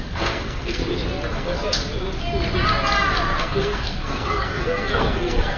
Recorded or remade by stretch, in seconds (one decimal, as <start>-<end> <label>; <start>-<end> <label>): 0.0-0.8 remade; 0.8-1.3 recorded; 1.3-1.8 remade; 1.8-3.4 recorded; 3.4-5.6 remade